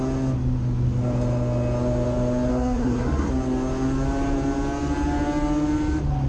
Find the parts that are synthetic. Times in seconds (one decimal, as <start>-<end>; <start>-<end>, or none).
2.5-3.3